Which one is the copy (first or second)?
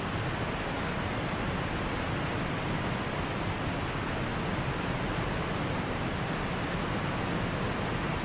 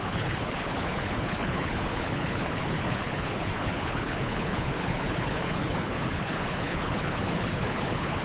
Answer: second